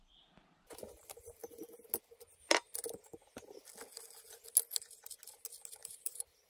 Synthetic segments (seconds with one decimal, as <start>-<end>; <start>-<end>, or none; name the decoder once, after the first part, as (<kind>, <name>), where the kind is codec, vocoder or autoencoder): 5.8-6.5 (vocoder, BigVGAN v2)